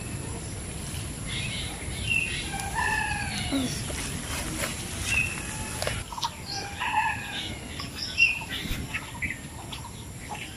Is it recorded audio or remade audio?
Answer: remade